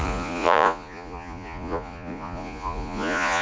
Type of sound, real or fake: fake